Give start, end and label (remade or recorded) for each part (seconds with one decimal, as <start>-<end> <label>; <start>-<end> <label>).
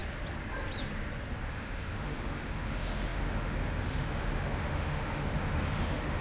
0.0-1.5 recorded; 1.5-6.2 remade